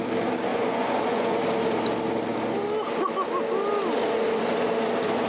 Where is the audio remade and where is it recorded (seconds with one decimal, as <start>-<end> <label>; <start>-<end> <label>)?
0.0-0.5 recorded; 0.5-1.4 remade; 1.4-5.3 recorded